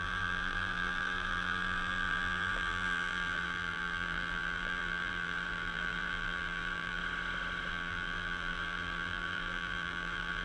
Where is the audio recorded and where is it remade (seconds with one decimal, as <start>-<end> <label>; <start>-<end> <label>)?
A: 0.0-7.0 remade; 7.0-7.7 recorded; 7.7-10.4 remade

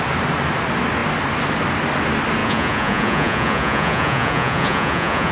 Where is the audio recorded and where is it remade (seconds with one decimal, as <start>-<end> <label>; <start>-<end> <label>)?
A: 0.0-2.4 recorded; 2.4-5.3 remade

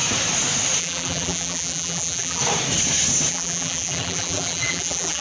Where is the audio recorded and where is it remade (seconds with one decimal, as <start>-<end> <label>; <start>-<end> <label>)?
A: 0.0-0.8 recorded; 0.8-2.4 remade; 2.4-3.3 recorded; 3.3-5.2 remade

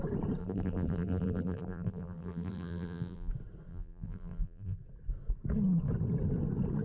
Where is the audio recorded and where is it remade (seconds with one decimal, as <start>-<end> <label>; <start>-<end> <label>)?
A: 0.0-0.4 recorded; 0.4-3.3 remade; 3.3-3.7 recorded; 3.7-4.8 remade; 4.8-6.8 recorded

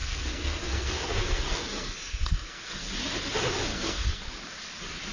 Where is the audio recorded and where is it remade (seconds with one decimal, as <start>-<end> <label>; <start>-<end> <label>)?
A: 0.0-2.9 remade; 2.9-3.7 recorded; 3.7-4.3 remade; 4.3-5.1 recorded

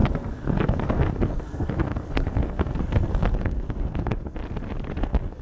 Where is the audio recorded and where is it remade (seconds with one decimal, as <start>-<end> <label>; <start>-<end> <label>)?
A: 0.0-4.4 remade; 4.4-5.0 recorded; 5.0-5.4 remade

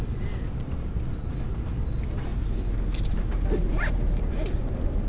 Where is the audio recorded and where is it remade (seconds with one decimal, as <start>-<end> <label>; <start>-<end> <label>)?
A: 0.0-5.1 recorded

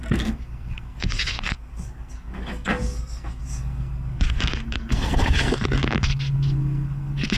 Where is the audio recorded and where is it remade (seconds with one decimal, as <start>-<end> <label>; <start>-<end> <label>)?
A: 0.0-7.4 remade